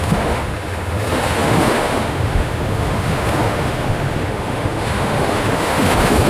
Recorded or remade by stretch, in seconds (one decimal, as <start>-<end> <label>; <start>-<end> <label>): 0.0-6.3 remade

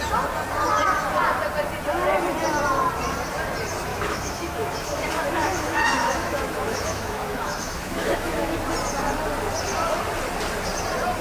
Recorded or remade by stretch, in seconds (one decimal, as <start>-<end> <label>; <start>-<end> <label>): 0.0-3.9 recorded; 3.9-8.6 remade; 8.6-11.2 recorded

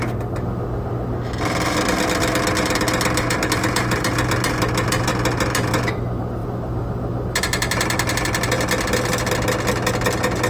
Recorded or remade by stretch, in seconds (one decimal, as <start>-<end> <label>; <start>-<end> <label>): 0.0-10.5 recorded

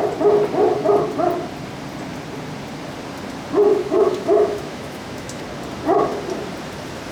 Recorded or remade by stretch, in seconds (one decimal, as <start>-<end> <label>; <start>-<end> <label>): 0.0-3.7 recorded; 3.7-5.4 remade; 5.4-7.1 recorded

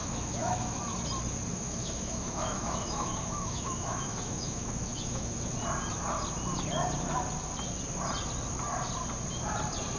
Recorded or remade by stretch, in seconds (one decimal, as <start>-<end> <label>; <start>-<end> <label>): 0.0-0.8 remade; 0.8-1.5 recorded; 1.5-5.5 remade; 5.5-10.0 recorded